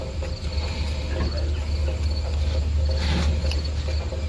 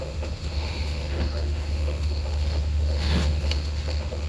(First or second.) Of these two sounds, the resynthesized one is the second